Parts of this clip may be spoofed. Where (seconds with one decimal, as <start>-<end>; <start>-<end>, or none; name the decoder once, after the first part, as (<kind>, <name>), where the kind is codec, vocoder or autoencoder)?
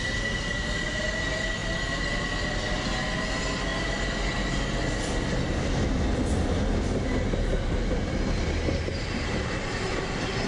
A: none